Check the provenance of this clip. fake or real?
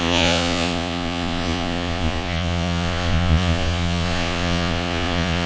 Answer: fake